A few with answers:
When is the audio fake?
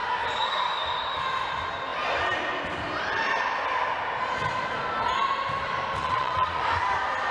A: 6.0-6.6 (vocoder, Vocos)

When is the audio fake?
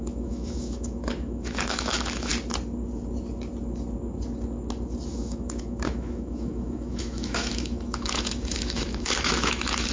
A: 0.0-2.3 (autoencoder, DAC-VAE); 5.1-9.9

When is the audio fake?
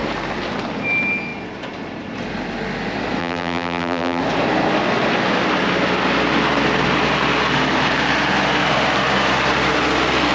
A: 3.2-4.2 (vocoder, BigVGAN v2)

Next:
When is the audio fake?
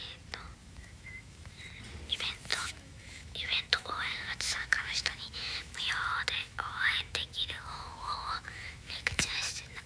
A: 0.6-1.6 (autoencoder, DAC-VAE); 2.5-5.9; 6.4-9.9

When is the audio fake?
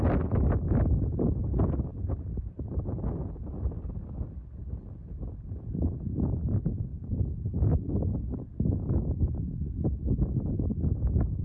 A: none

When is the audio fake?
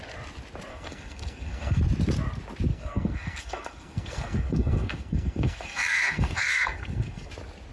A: 0.7-1.8 (codec, SNAC); 2.7-7.3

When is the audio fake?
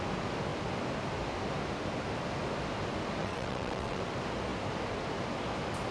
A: 3.2-4.0 (vocoder, WaveNeXt)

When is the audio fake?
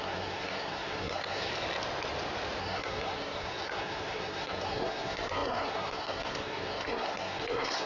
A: 0.0-1.5 (codec, SNAC); 2.6-7.9